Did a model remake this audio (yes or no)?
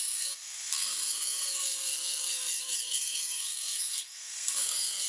yes